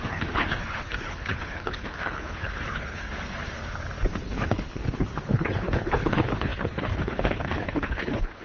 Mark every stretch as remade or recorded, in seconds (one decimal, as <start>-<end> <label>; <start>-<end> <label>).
0.0-3.6 remade; 3.6-4.2 recorded; 4.2-8.4 remade